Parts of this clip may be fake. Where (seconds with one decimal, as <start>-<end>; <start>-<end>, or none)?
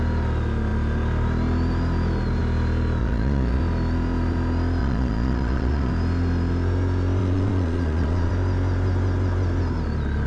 3.0-3.6; 4.8-5.9; 7.2-8.3